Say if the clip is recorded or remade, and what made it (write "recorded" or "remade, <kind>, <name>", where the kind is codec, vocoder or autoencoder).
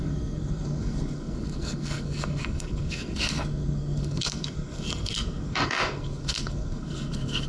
remade, codec, SNAC